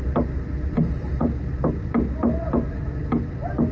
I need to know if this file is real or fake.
real